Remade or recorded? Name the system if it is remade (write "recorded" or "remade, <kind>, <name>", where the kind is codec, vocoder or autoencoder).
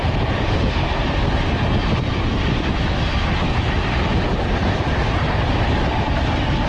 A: remade, vocoder, BigVGAN v2